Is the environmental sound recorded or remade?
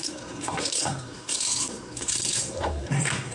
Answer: remade